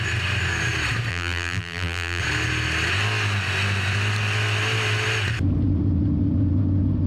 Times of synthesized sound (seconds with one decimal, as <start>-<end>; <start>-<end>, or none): 1.1-2.2

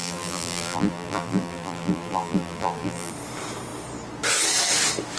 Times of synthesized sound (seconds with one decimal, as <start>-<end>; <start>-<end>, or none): 0.0-3.1

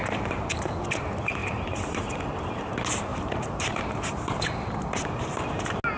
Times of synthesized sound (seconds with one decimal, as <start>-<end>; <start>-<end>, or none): 0.0-0.6; 1.4-2.3; 3.1-5.4

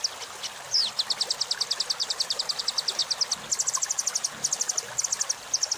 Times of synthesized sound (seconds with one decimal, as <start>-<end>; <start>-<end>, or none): 2.0-2.6

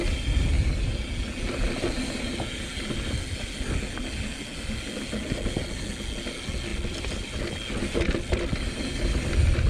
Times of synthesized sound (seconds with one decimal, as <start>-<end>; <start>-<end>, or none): 6.7-7.4